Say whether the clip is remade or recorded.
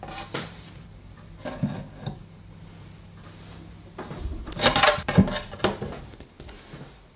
remade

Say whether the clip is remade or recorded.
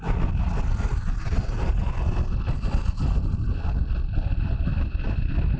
recorded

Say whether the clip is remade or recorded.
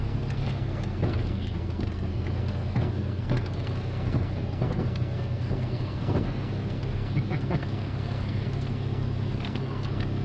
remade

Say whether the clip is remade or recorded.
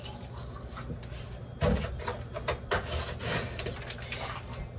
recorded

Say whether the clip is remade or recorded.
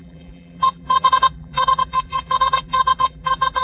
remade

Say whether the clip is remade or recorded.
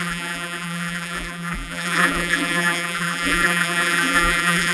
remade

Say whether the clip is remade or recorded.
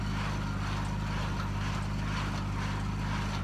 recorded